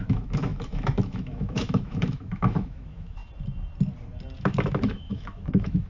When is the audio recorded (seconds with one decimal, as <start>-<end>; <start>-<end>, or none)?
3.2-4.4